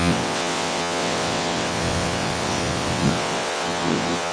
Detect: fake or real fake